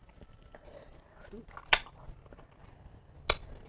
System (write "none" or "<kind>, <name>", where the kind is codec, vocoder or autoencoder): none